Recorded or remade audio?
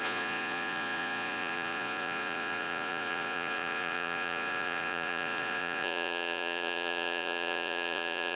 remade